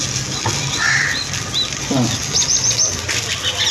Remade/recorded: recorded